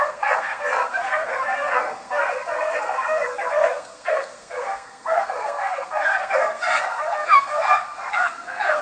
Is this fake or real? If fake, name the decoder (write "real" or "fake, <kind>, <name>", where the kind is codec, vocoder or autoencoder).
fake, codec, SNAC